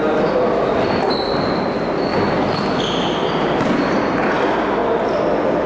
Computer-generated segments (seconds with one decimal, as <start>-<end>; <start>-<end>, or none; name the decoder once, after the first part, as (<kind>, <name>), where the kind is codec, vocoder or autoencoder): none